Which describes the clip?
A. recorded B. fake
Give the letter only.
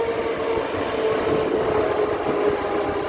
A